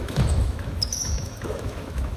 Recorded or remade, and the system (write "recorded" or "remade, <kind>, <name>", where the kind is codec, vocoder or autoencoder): remade, autoencoder, DAC-VAE